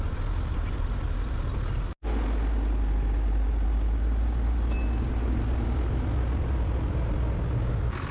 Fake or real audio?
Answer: real